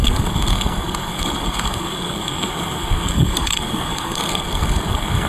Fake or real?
fake